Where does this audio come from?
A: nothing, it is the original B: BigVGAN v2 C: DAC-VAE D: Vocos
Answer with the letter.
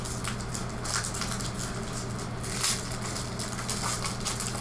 A